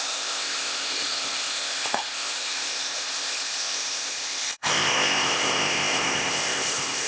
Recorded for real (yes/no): no